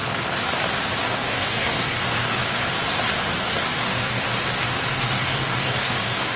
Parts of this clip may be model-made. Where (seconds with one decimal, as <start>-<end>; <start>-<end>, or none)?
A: 1.0-2.4; 3.4-4.2; 4.9-6.4